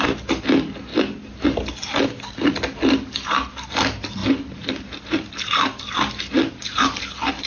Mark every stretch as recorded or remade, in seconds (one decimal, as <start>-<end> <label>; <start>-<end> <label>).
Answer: 0.0-7.5 recorded